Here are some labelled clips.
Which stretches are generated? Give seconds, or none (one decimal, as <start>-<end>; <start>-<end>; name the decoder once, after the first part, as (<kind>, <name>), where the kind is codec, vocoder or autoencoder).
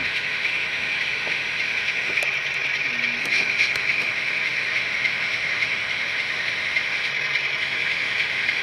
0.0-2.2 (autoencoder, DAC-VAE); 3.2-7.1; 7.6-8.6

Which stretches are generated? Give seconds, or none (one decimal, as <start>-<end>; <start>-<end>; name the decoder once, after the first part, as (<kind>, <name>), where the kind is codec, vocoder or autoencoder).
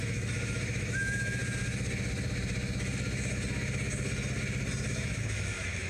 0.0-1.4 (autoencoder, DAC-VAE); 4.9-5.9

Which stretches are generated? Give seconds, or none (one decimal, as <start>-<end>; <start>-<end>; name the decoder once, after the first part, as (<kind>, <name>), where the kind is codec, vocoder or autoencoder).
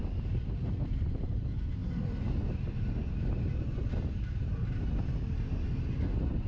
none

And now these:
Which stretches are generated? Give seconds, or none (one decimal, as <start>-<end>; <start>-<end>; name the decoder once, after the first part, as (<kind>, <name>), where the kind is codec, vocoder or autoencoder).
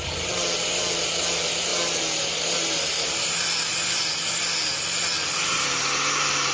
none